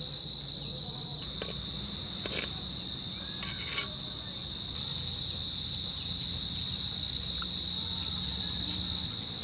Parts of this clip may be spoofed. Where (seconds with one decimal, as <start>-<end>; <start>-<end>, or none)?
1.1-1.9